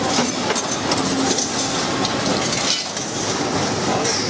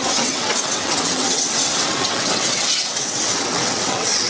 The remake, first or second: second